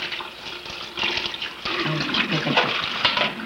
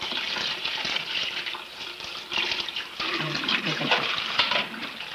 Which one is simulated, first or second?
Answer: second